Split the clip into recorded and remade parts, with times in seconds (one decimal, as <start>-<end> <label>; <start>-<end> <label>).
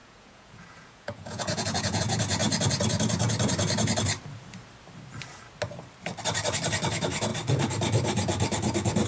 0.0-2.0 remade; 2.0-9.1 recorded